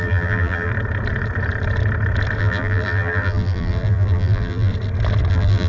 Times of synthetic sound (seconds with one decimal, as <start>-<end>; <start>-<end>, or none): 0.0-0.7; 2.4-4.7; 5.3-5.7